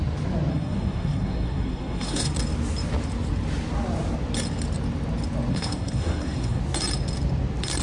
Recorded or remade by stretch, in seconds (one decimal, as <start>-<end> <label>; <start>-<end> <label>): 0.0-0.5 recorded; 0.5-2.3 remade; 2.3-5.5 recorded; 5.5-6.6 remade; 6.6-7.8 recorded